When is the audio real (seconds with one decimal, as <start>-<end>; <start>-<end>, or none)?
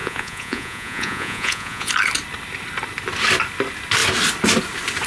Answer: 1.9-5.1